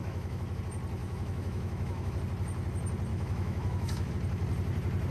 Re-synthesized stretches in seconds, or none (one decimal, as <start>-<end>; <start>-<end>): 0.0-0.6; 1.0-2.2; 3.1-4.1